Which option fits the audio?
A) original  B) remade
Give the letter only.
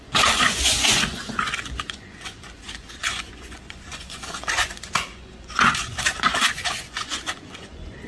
B